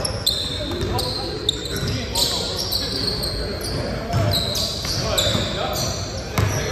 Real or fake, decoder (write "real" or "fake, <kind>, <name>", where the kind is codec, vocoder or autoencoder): real